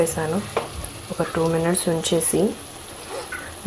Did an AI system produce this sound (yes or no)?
no